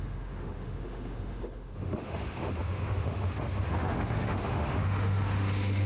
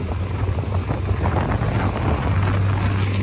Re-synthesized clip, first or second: first